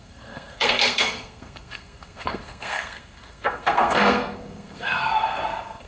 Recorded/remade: remade